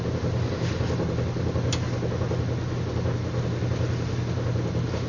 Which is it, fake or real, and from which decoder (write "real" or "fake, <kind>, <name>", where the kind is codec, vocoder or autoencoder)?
real